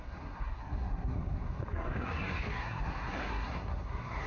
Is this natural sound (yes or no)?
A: no